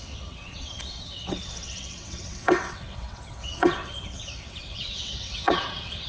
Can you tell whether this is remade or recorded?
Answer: remade